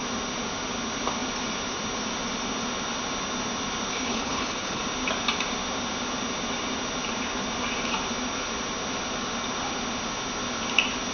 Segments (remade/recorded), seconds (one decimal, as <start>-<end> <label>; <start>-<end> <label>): 0.0-3.9 recorded; 3.9-4.8 remade; 4.8-11.1 recorded